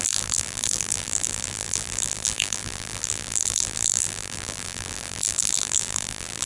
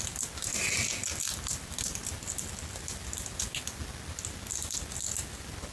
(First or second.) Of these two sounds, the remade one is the first